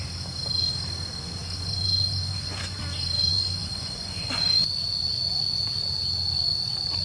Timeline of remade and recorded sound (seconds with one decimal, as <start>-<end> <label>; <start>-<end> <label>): 0.0-1.4 recorded; 1.4-2.8 remade; 2.8-3.3 recorded; 3.3-4.4 remade; 4.4-7.0 recorded